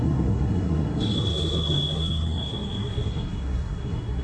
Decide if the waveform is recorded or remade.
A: remade